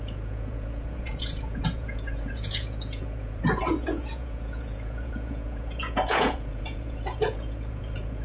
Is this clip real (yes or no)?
no